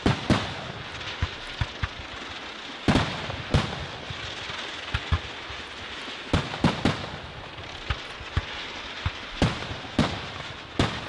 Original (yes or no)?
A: yes